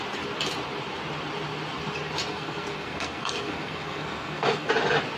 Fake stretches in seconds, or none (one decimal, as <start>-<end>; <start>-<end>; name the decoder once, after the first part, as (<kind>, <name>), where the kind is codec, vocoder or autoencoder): 2.3-4.7 (codec, SNAC)